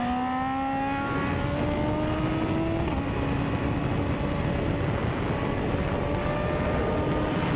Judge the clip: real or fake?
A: real